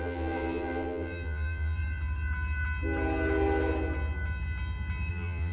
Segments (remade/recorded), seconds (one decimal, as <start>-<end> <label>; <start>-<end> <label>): 0.0-1.8 remade; 1.8-5.1 recorded; 5.1-5.5 remade